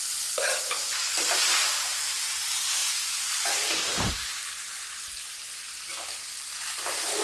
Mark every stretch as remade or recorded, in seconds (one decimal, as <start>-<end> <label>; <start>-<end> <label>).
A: 0.0-7.2 recorded